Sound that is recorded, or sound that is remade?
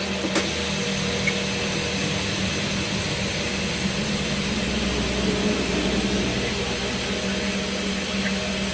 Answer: recorded